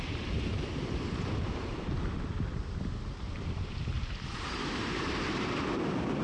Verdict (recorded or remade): remade